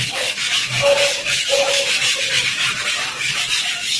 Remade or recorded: remade